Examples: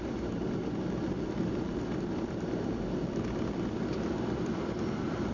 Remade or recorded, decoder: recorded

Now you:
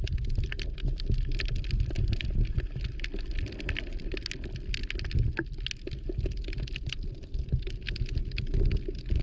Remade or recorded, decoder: recorded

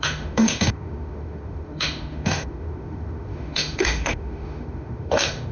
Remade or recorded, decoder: remade, autoencoder, DAC-VAE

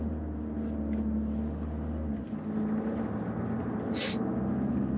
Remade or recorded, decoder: recorded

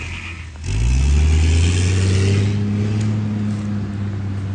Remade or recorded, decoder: recorded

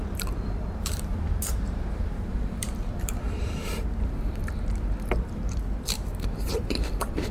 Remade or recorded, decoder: remade, vocoder, BigVGAN v2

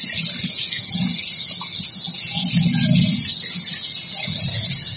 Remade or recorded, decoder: recorded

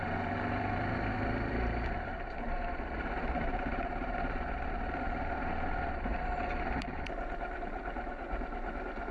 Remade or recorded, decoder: remade, vocoder, BigVGAN v2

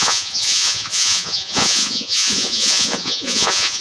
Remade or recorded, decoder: remade, vocoder, Vocos